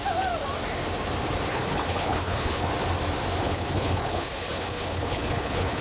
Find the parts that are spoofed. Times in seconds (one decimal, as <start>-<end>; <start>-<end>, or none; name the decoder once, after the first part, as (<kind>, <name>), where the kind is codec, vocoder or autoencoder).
1.5-2.7 (codec, HILCodec); 3.4-5.8